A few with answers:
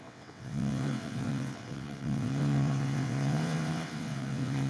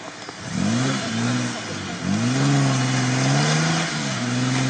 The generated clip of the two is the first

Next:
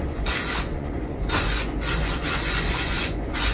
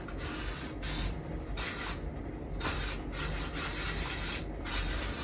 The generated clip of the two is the first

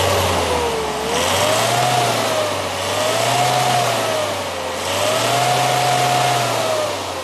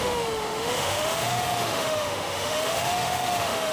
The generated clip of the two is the second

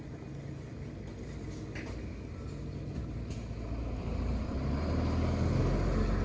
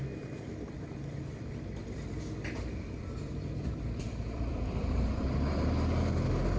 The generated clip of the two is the second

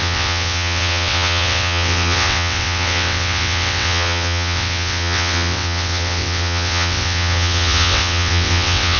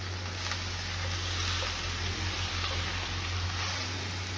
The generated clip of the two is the first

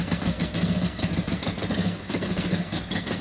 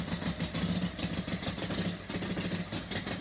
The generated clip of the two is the first